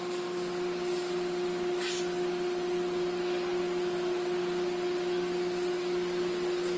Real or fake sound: real